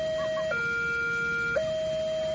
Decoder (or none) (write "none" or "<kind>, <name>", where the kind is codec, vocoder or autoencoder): none